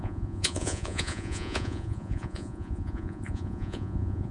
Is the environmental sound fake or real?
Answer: fake